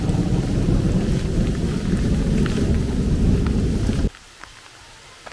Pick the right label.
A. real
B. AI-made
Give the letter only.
A